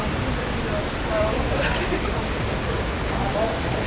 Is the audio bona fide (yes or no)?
yes